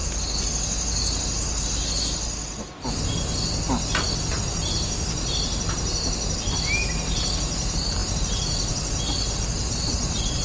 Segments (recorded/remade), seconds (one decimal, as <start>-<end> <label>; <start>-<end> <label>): 0.0-10.4 recorded